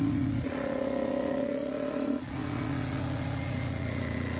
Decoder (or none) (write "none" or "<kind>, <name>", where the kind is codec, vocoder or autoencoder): vocoder, Vocos